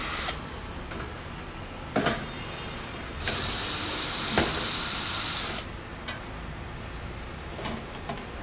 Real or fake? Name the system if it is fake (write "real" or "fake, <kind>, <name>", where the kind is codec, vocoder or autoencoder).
real